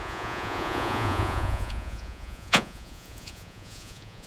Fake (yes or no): yes